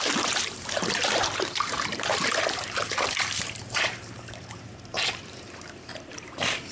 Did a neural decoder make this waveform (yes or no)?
yes